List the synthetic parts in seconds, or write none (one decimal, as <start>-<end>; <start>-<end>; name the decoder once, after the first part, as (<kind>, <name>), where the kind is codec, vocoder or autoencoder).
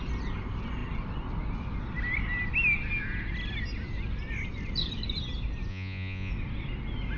5.7-6.3 (vocoder, Vocos)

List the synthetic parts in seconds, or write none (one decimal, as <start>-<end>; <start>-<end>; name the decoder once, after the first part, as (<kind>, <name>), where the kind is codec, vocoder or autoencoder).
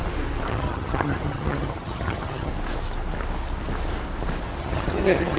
0.5-2.5 (vocoder, HiFi-GAN); 4.6-5.4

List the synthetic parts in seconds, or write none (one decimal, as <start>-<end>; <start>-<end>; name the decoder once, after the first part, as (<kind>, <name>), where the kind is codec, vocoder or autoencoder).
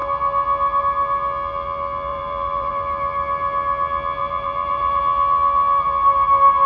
2.1-2.7 (vocoder, BigVGAN v2); 4.2-5.0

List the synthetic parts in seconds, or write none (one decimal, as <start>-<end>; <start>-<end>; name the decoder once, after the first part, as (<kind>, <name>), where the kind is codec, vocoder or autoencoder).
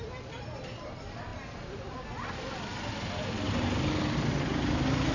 none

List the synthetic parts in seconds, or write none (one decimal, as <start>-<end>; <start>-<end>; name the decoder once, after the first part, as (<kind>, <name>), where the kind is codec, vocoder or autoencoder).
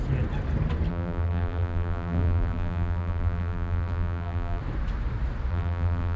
0.9-4.6 (vocoder, BigVGAN v2); 5.5-6.2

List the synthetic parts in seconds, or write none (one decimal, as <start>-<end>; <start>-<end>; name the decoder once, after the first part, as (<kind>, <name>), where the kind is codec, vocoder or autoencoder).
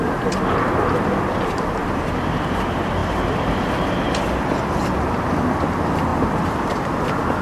1.8-2.6 (vocoder, BigVGAN v2); 3.0-4.1; 6.1-6.9